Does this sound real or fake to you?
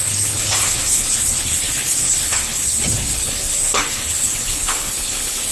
fake